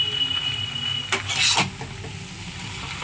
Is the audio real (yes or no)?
yes